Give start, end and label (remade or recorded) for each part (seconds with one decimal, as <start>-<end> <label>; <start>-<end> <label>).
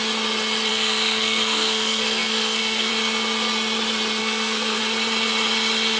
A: 0.0-0.7 recorded; 0.7-2.9 remade; 2.9-4.2 recorded; 4.2-4.8 remade; 4.8-6.0 recorded